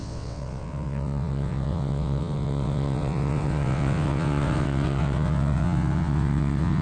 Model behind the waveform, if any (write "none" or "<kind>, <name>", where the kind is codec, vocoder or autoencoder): vocoder, WaveNeXt